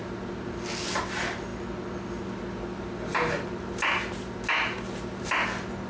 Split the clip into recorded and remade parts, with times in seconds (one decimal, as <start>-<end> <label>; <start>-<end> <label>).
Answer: 0.0-5.9 recorded